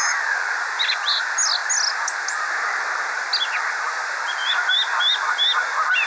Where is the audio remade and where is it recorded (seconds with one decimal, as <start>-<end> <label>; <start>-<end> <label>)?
0.0-6.1 recorded